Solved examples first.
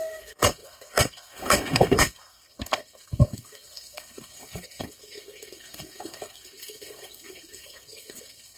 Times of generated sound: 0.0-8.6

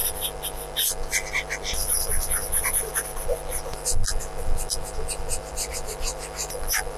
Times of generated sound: none

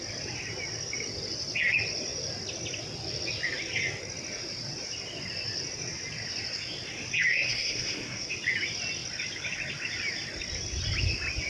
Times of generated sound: 7.3-8.3